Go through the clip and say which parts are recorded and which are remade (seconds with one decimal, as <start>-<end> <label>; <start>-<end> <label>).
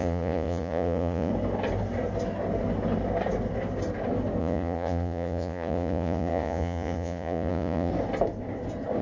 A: 0.0-1.3 remade; 1.3-4.4 recorded; 4.4-7.9 remade; 7.9-9.0 recorded